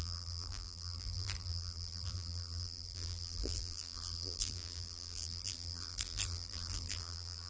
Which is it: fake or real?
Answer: fake